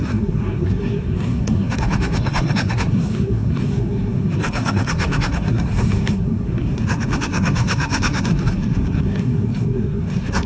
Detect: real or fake fake